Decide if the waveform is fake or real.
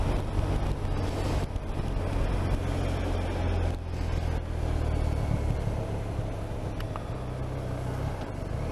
real